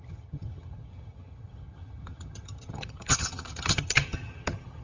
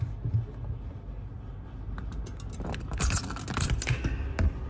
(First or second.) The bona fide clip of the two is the second